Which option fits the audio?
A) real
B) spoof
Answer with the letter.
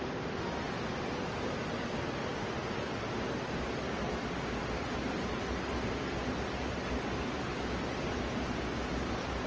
A